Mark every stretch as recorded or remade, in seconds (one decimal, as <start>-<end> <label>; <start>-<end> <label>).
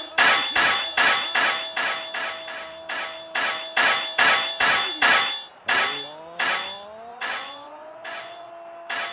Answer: 0.0-7.1 recorded; 7.1-8.5 remade; 8.5-9.1 recorded